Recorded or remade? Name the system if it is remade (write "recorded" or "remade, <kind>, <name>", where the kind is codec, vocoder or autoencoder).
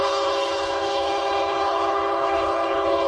remade, codec, HILCodec